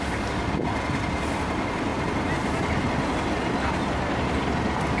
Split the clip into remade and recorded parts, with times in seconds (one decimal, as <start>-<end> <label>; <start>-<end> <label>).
0.0-5.0 recorded